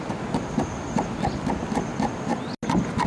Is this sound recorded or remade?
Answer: recorded